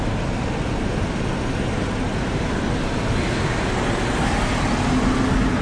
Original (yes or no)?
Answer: yes